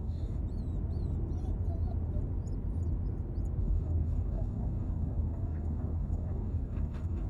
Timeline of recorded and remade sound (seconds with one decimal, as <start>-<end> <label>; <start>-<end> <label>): 0.0-0.4 remade; 0.4-3.6 recorded; 3.6-7.3 remade